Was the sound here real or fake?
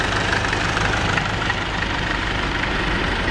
fake